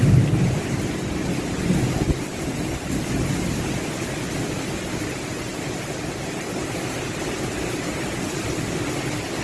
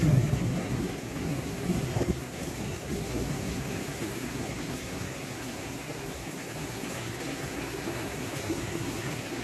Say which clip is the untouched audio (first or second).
first